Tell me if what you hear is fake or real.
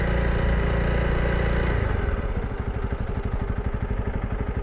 real